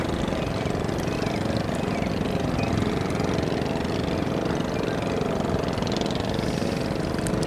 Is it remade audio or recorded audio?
recorded